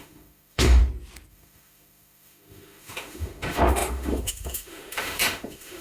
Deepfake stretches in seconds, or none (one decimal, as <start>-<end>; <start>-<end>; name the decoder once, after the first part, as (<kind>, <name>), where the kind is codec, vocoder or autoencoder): 0.0-0.8 (autoencoder, DAC-VAE); 1.3-5.8

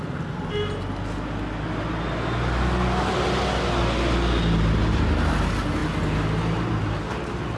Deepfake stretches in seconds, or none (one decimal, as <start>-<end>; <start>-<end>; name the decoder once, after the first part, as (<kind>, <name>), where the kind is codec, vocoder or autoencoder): none

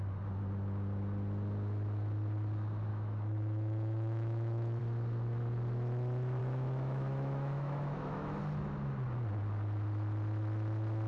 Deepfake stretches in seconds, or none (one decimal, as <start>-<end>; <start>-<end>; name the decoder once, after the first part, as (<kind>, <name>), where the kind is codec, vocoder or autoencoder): 2.9-4.8 (autoencoder, DAC-VAE); 6.4-8.4

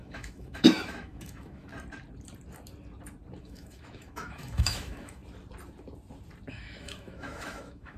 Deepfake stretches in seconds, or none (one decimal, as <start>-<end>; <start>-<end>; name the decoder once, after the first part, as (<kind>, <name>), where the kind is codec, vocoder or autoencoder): 0.0-1.7 (autoencoder, DAC-VAE); 3.4-5.2; 6.5-8.0

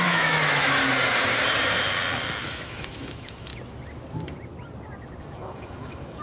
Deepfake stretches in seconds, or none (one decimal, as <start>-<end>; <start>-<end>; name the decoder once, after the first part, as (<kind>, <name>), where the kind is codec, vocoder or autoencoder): 0.0-0.8 (autoencoder, DAC-VAE); 2.4-3.5; 5.2-6.2

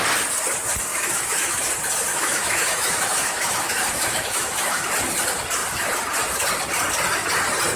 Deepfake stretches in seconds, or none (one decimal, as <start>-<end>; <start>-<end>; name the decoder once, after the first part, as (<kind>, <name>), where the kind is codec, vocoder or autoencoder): 0.9-1.7 (autoencoder, DAC-VAE); 2.1-4.8